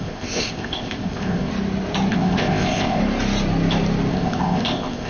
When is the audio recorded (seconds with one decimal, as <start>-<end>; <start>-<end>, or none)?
1.5-2.1; 3.0-4.1